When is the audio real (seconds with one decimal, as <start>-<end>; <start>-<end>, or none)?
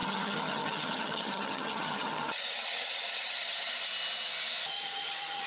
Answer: 3.9-4.7